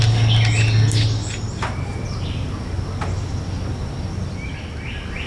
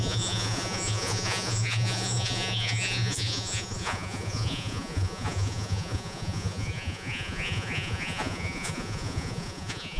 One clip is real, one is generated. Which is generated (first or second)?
second